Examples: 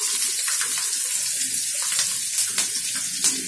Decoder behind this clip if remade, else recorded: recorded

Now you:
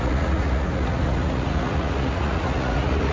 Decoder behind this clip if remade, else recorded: remade, vocoder, Vocos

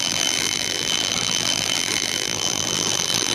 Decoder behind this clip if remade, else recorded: remade, vocoder, BigVGAN v2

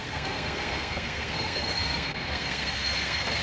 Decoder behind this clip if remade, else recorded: remade, codec, SNAC